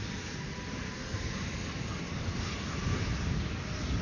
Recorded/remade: recorded